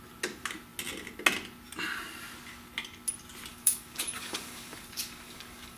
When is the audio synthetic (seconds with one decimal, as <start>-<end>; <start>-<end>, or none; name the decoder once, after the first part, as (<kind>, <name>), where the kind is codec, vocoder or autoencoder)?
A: 3.5-5.8 (codec, DAC)